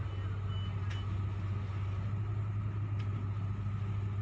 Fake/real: real